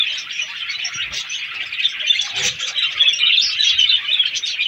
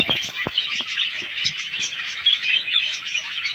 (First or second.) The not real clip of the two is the second